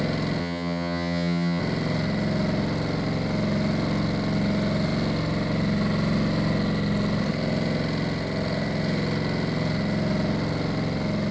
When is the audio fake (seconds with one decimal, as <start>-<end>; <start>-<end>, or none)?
0.4-1.6